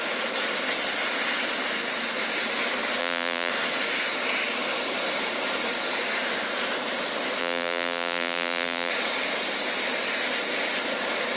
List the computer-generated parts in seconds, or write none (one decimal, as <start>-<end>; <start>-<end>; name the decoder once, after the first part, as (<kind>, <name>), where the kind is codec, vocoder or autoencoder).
3.0-3.5 (vocoder, BigVGAN v2); 7.4-8.9

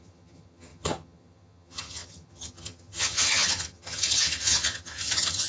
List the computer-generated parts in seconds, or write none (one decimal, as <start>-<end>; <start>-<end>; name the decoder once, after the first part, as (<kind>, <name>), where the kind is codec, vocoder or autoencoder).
0.0-5.5 (vocoder, HiFi-GAN)